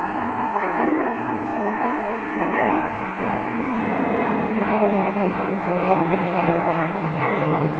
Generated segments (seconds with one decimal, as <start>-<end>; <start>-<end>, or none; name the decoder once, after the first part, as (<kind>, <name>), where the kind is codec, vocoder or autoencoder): 0.0-3.8 (codec, SNAC); 4.5-7.8